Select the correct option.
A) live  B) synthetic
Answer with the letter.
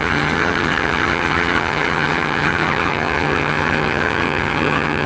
B